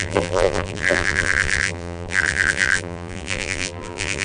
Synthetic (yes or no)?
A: yes